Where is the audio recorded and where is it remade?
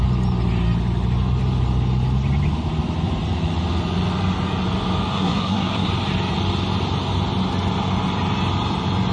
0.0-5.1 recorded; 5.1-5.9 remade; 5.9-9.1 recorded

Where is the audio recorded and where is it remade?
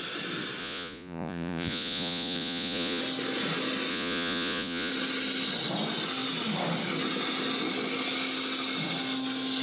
0.0-0.6 recorded; 0.6-3.0 remade; 3.0-3.9 recorded; 3.9-4.9 remade; 4.9-9.6 recorded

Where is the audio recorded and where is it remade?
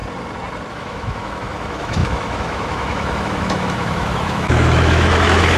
0.0-0.7 recorded; 0.7-5.6 remade